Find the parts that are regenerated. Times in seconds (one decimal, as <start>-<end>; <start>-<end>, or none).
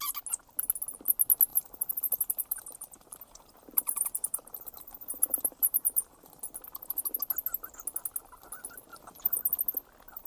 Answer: 1.5-6.3; 8.9-9.4